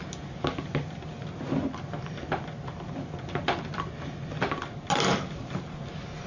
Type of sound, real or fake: real